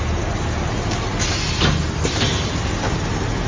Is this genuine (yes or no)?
yes